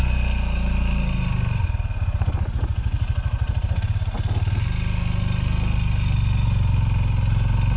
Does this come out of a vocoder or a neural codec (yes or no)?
no